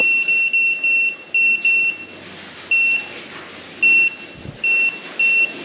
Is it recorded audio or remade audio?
recorded